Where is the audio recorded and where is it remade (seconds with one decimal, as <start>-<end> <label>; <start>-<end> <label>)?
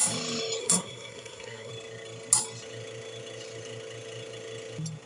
0.0-0.6 recorded; 0.6-1.7 remade; 1.7-5.1 recorded